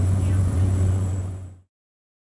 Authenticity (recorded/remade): remade